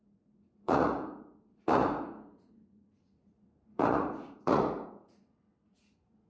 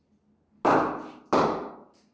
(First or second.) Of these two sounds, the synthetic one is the first